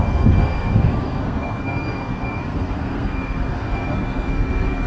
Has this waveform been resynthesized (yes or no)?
yes